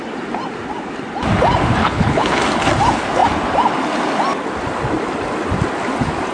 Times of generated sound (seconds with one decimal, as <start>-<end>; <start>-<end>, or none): 1.8-2.4